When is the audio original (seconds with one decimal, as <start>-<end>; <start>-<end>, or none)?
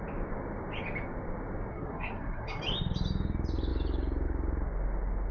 0.0-1.7; 2.6-5.3